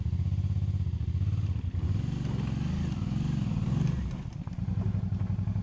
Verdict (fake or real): real